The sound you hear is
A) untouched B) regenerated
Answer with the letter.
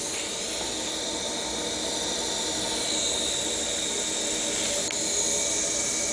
A